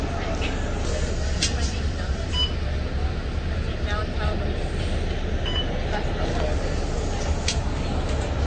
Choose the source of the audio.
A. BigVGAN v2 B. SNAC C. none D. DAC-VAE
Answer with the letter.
C